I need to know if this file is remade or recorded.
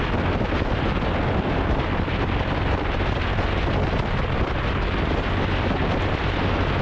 recorded